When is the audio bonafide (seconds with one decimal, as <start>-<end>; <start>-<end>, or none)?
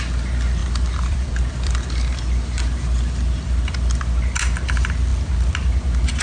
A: 0.0-0.6; 4.0-6.2